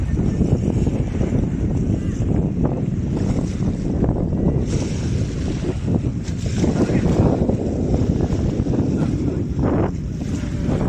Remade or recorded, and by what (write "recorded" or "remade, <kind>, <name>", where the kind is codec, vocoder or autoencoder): recorded